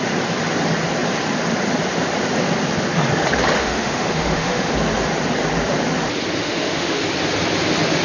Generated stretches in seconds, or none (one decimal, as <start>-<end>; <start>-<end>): 3.6-4.7; 6.4-7.0